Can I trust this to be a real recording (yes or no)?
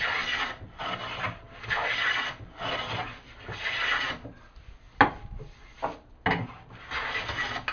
yes